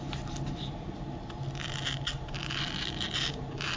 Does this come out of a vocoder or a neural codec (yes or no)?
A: no